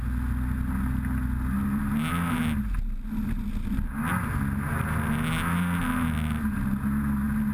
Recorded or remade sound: recorded